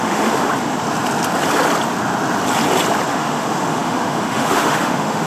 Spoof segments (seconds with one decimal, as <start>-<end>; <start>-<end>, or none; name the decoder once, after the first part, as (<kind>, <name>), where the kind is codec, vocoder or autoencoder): 0.0-0.5 (autoencoder, DAC-VAE); 3.1-5.3